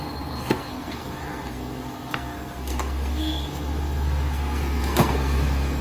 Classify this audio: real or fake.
fake